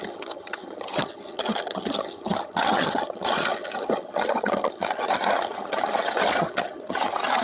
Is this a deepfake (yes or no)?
yes